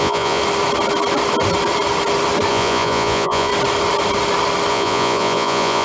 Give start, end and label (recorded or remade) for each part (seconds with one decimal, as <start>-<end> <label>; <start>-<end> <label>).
0.0-0.4 remade; 0.4-2.5 recorded; 2.5-3.5 remade; 3.5-4.7 recorded; 4.7-5.8 remade